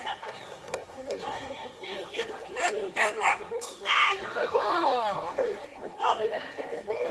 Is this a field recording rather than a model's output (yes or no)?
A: no